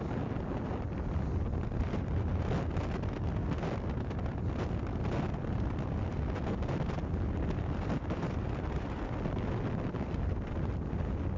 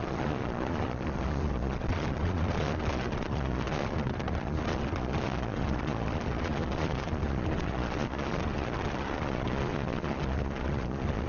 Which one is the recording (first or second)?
first